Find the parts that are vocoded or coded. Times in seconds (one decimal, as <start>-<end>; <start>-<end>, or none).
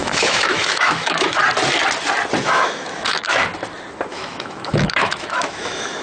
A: 0.0-1.4; 2.4-3.4; 4.1-6.0